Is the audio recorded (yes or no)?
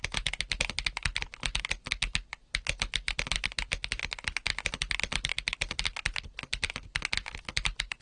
yes